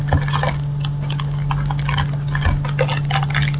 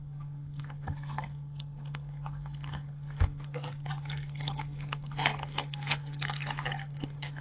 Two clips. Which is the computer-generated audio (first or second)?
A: second